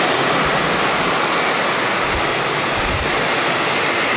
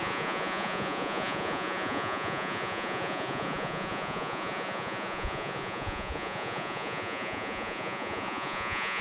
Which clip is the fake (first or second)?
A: second